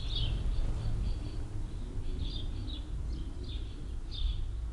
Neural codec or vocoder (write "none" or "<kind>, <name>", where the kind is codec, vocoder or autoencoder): none